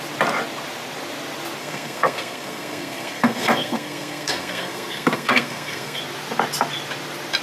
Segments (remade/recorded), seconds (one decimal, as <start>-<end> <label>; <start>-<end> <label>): 0.0-1.6 recorded; 1.6-6.0 remade; 6.0-7.4 recorded